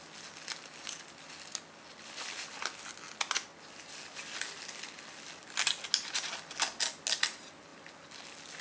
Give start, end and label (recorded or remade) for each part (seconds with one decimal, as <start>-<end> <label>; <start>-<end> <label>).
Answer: 0.0-8.6 recorded